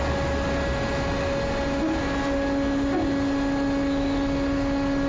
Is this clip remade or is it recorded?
recorded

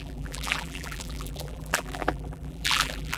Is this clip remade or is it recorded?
remade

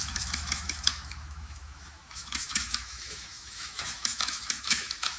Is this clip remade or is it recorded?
remade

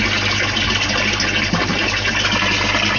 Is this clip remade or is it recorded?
recorded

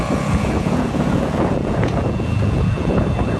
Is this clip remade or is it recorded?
remade